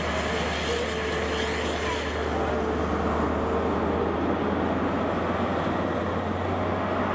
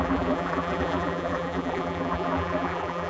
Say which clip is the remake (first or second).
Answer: second